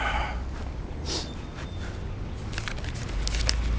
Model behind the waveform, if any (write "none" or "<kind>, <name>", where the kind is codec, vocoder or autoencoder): none